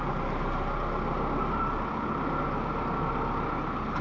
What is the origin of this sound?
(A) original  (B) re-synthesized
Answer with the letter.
A